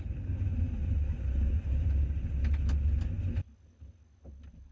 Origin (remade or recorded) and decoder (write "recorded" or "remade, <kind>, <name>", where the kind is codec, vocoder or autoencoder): recorded